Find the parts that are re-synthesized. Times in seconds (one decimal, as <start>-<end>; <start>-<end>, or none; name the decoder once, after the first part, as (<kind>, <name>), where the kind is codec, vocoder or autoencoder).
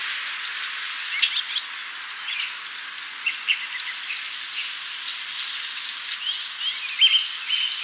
none